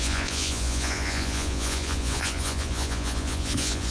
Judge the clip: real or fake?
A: fake